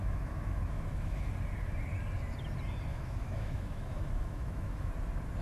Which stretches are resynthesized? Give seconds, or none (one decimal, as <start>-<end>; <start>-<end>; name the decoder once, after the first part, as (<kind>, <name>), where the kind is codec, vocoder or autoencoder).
0.0-1.3 (autoencoder, DAC-VAE); 2.9-4.9